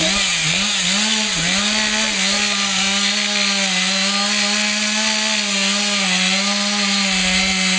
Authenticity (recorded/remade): recorded